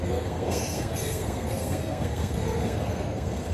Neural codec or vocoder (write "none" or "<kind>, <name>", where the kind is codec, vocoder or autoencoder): codec, SNAC